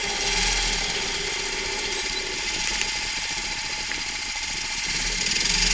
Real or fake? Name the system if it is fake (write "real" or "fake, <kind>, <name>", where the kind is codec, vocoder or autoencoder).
real